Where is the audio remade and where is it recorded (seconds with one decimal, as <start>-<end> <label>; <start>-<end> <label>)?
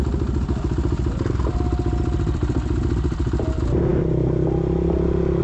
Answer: 0.0-5.4 recorded